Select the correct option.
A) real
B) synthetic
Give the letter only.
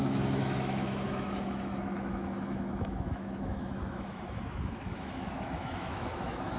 B